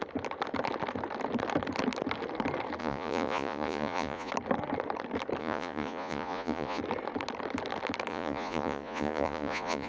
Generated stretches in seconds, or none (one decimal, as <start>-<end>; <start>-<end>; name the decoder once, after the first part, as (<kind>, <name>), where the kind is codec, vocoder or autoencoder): 2.8-4.3 (vocoder, Vocos); 5.4-6.8; 8.1-9.9